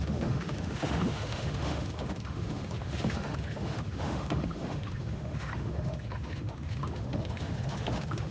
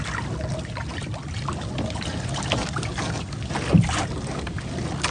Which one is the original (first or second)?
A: second